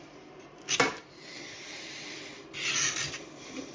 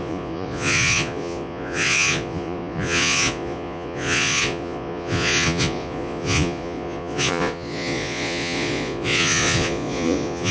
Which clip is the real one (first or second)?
first